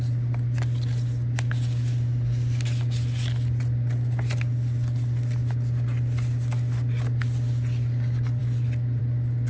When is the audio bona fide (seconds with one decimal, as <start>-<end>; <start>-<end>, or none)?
0.0-9.5